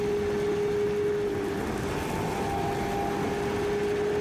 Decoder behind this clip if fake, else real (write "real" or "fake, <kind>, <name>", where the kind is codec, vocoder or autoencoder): real